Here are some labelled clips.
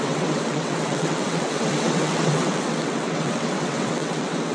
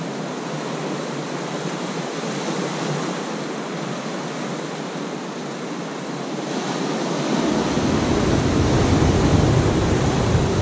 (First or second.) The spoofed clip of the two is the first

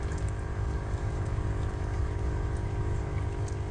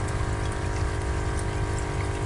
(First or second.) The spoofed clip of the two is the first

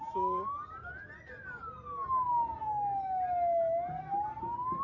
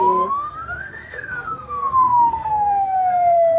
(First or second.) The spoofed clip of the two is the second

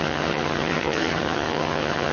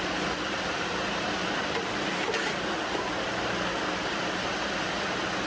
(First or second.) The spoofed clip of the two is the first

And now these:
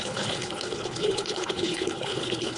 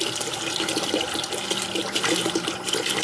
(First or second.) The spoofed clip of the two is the first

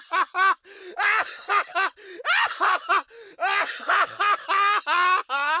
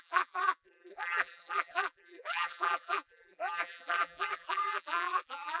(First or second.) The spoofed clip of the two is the second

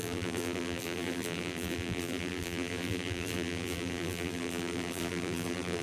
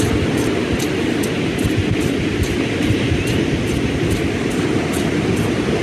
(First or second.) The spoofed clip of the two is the first